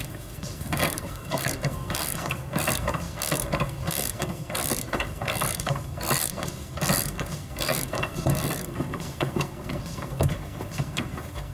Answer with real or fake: fake